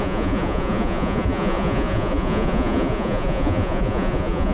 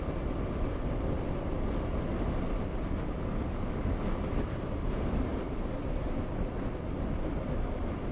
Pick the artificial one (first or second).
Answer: first